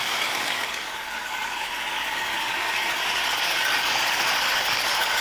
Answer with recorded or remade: remade